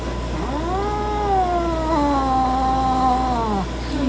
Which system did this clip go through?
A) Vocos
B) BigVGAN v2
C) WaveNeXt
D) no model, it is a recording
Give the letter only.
D